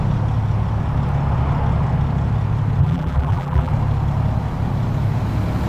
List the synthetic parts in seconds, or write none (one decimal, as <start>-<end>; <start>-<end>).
2.8-3.7